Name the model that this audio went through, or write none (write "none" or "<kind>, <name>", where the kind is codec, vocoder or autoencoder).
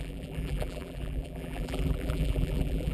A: vocoder, BigVGAN v2